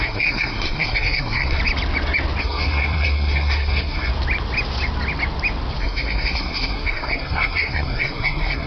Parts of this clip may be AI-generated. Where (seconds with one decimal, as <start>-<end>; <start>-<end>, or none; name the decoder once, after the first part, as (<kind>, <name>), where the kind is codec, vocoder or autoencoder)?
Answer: 0.0-1.6 (codec, SNAC); 2.4-4.1; 5.8-8.7